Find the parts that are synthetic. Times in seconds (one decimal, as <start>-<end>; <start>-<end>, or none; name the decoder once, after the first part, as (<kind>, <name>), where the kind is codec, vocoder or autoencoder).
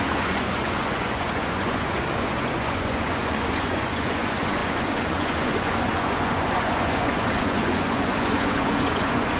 0.0-9.4 (vocoder, Vocos)